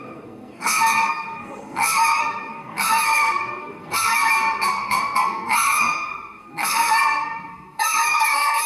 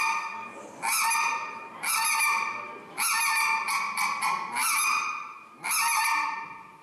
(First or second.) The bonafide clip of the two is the second